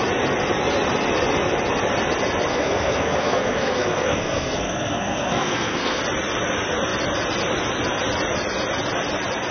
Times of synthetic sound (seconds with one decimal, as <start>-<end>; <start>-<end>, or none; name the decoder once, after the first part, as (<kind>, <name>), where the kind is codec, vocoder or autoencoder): 2.5-6.0 (codec, SNAC)